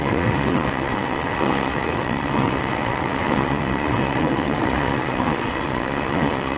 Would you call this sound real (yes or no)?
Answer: no